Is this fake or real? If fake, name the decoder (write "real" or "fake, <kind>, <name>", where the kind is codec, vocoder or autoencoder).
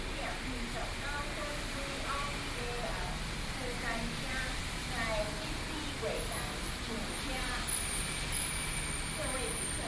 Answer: real